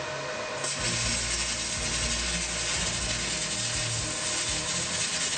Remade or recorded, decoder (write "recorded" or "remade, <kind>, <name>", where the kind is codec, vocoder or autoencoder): recorded